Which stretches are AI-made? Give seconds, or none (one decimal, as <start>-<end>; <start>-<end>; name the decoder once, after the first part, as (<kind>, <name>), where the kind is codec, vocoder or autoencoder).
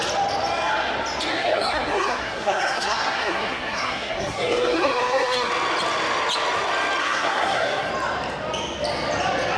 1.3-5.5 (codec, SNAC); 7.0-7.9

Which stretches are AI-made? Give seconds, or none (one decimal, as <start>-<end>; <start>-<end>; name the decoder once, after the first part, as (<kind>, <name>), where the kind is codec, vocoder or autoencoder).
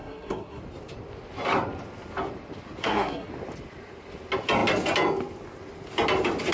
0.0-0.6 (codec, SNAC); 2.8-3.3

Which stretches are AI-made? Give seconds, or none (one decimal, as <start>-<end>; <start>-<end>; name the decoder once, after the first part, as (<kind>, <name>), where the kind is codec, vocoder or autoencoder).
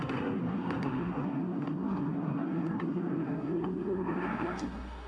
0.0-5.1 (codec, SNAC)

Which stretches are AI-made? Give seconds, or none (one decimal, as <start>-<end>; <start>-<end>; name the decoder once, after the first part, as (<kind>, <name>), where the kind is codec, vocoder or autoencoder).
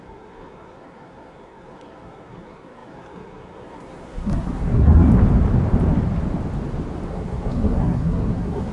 0.0-5.1 (codec, SNAC); 7.1-8.7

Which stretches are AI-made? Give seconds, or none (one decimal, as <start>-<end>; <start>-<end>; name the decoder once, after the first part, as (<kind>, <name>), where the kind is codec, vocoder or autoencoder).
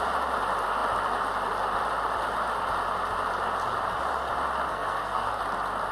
4.7-5.4 (codec, SNAC)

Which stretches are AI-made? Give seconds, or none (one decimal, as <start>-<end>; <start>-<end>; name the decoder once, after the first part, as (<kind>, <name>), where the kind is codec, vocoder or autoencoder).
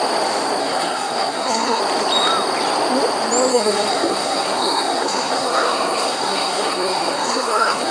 0.6-1.8 (codec, SNAC); 3.5-7.9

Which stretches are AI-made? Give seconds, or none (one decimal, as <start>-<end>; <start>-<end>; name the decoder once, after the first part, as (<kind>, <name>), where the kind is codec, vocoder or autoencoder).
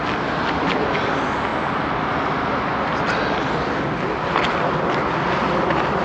none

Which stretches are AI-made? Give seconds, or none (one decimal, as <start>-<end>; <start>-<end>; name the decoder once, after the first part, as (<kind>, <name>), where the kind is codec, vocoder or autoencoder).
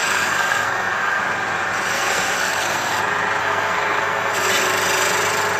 0.0-1.2 (codec, SNAC); 1.9-3.0; 3.4-4.5